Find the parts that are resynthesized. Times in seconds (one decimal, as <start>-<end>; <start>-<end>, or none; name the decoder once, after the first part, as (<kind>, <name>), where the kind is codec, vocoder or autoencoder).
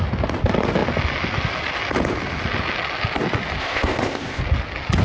3.6-4.4 (codec, ZipCodec)